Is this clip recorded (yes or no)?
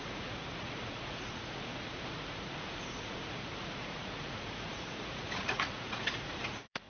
no